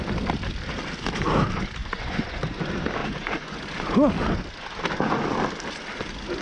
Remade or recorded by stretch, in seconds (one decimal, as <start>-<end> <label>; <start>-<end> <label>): 0.0-1.8 recorded; 1.8-2.4 remade; 2.4-3.0 recorded; 3.0-3.6 remade; 3.6-6.4 recorded